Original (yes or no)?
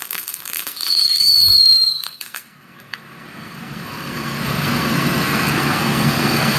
no